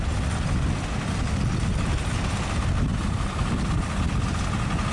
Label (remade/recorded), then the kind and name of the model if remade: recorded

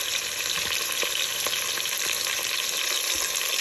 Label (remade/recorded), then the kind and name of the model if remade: recorded